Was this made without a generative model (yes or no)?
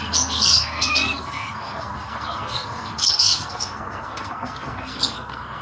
no